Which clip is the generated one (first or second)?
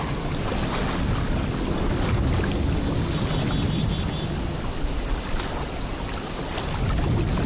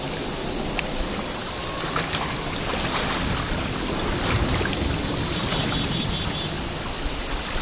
second